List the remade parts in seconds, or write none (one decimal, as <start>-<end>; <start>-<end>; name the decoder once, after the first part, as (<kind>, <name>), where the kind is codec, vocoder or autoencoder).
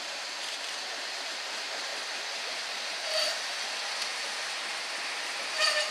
0.0-1.9 (vocoder, BigVGAN v2); 2.5-5.9